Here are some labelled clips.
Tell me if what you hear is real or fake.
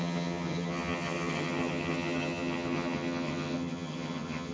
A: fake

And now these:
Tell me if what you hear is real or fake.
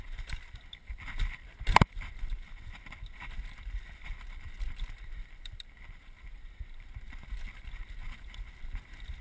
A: fake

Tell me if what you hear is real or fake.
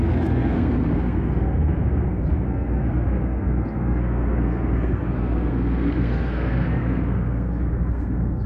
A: fake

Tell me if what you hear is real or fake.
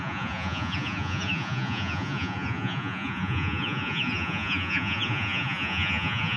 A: fake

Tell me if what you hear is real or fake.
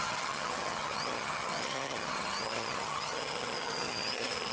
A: fake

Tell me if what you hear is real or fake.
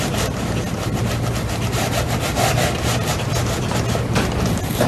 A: real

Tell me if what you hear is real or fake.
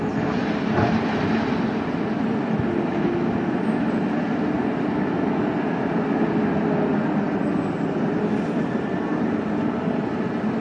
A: real